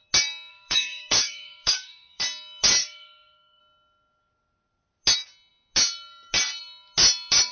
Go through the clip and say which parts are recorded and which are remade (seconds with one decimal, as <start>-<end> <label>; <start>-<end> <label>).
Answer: 0.0-0.5 recorded; 0.5-2.2 remade; 2.2-2.8 recorded; 2.8-3.6 remade; 3.6-7.5 recorded